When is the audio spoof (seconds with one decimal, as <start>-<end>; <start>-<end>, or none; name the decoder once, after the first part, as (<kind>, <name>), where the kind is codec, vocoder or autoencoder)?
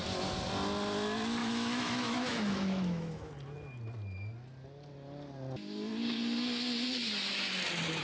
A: 1.4-3.3 (autoencoder, DAC-VAE)